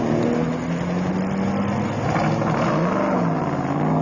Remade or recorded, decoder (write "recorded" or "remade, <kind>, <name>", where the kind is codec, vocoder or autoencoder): recorded